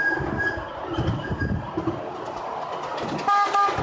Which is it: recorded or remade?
recorded